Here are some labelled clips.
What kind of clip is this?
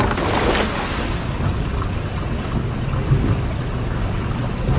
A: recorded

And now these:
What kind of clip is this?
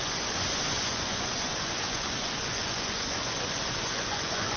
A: remade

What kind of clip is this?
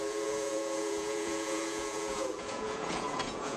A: remade